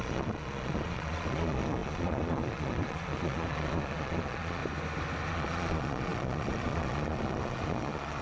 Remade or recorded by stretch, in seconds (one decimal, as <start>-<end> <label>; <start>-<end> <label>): 0.0-4.6 remade; 4.6-5.3 recorded; 5.3-8.2 remade